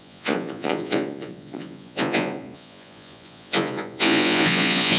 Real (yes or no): no